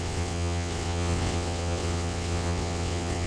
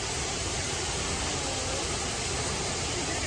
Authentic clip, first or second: second